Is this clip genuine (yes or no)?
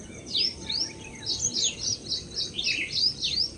no